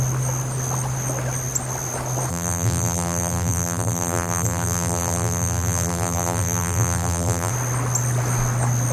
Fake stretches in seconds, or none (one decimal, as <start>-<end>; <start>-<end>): 2.3-7.5